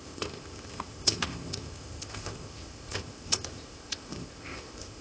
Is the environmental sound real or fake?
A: fake